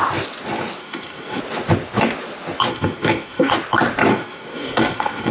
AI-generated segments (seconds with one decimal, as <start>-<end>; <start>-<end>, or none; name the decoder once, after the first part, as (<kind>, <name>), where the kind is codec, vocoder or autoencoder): 0.8-1.4 (codec, SNAC); 2.7-3.5; 4.1-5.3